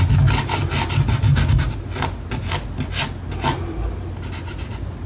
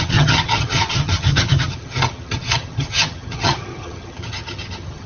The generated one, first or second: second